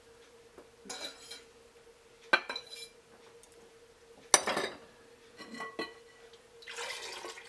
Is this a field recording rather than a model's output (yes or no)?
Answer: yes